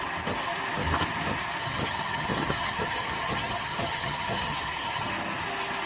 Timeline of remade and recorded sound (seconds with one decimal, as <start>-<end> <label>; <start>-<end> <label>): 0.0-1.6 recorded; 1.6-5.1 remade; 5.1-5.9 recorded